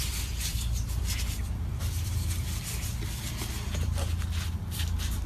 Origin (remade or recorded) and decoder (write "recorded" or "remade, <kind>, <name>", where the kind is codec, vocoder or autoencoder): remade, vocoder, BigVGAN v2